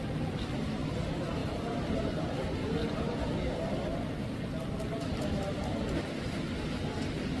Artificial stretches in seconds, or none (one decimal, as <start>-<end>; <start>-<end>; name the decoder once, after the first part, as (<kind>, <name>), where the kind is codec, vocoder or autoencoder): 1.4-2.2 (vocoder, BigVGAN v2)